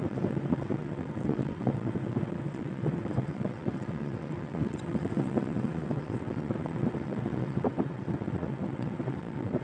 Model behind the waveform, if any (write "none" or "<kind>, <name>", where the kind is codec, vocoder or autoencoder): vocoder, WaveNeXt